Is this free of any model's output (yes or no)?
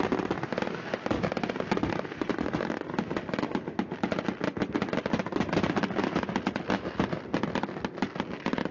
yes